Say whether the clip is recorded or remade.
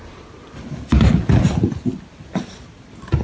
recorded